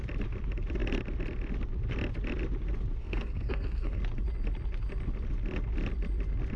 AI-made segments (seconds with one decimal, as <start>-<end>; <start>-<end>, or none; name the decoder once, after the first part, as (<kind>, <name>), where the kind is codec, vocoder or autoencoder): 3.0-4.0 (codec, SNAC)